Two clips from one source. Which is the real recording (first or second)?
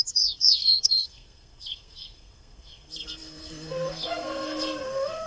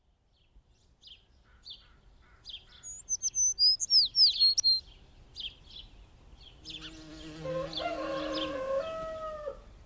second